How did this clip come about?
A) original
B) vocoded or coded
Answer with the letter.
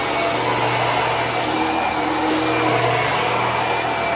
A